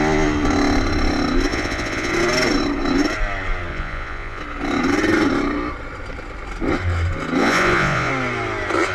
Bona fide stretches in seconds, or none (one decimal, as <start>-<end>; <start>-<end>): 0.0-1.5; 2.1-3.7; 4.4-7.4; 8.1-8.9